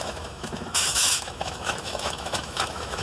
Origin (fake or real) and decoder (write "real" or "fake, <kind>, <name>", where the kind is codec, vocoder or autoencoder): fake, autoencoder, DAC-VAE